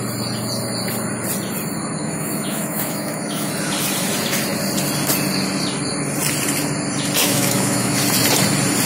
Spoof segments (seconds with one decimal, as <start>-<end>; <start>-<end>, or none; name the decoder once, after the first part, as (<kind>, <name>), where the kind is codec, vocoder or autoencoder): 2.0-3.5 (autoencoder, DAC-VAE); 7.2-8.0